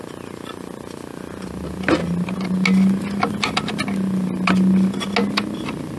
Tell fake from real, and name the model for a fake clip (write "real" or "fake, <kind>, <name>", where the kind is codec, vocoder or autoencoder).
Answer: real